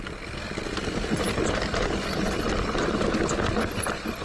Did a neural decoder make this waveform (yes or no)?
no